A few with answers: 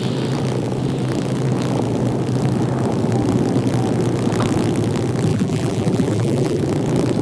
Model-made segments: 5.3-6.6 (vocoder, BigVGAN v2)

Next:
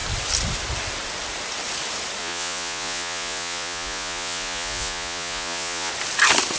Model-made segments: 2.2-5.9 (vocoder, Vocos)

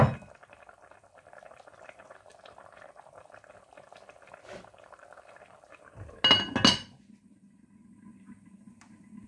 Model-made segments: none

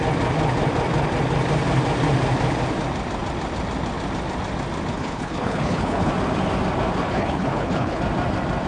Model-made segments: 4.9-6.1 (codec, HILCodec); 7.0-8.0

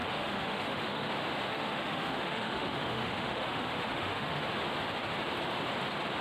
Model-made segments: 0.0-1.1 (autoencoder, DAC-VAE); 1.5-4.4

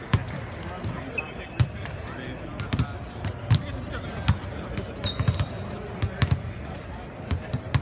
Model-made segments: none

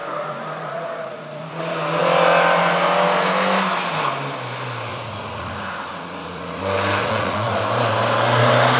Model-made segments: 0.0-1.6 (vocoder, Vocos); 4.9-6.6; 7.0-7.6

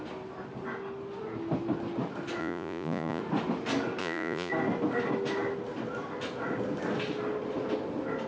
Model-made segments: 2.4-3.2 (vocoder, Vocos); 4.0-4.5